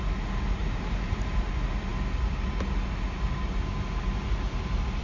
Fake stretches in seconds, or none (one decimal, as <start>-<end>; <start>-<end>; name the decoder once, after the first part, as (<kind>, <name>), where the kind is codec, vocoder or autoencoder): 0.6-1.5 (vocoder, BigVGAN v2)